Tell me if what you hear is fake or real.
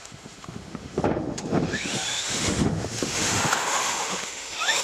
fake